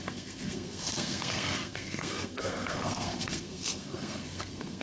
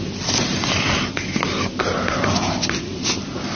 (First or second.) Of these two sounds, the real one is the second